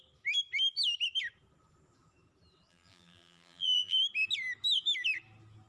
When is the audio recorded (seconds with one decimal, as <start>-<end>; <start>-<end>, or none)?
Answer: 0.0-2.7; 4.0-5.7